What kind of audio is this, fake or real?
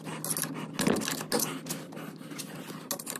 real